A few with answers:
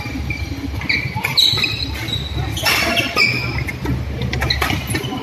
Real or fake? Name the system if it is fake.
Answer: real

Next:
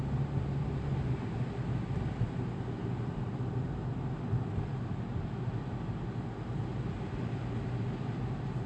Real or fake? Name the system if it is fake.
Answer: real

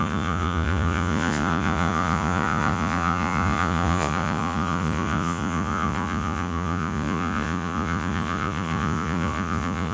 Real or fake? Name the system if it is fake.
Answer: fake, vocoder, Vocos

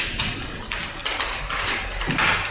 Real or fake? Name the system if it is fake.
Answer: real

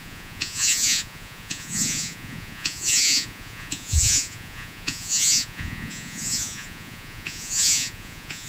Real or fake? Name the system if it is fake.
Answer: fake, vocoder, Vocos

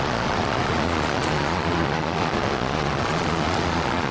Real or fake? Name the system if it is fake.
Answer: fake, vocoder, Vocos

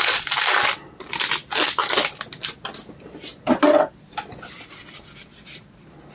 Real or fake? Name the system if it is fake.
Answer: real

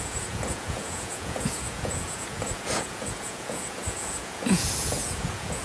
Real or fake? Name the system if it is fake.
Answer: fake, vocoder, Vocos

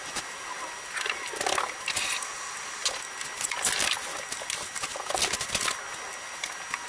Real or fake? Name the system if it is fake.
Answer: real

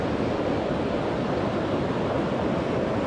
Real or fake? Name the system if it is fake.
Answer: real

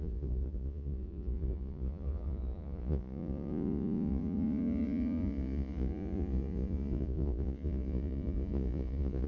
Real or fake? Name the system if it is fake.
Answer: fake, vocoder, Vocos